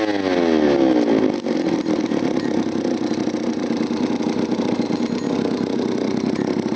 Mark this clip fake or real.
real